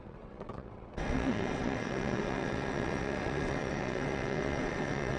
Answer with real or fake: fake